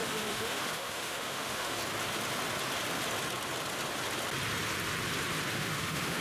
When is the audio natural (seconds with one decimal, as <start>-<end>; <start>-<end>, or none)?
1.8-5.5